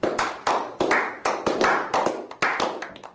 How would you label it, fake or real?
real